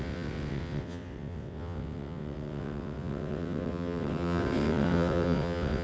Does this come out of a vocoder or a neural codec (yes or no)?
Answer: yes